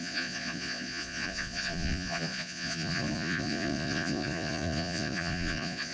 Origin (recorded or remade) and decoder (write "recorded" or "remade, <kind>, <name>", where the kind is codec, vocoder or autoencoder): remade, vocoder, Vocos